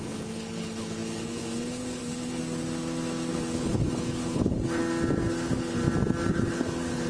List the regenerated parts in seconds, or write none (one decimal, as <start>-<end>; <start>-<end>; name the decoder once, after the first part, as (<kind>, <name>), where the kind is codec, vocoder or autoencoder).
0.0-2.4 (codec, HILCodec); 3.3-4.8; 5.3-5.8; 6.3-7.1